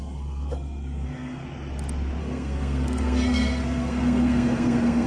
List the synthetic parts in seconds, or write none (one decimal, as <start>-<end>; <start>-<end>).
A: 0.0-1.4; 2.2-5.1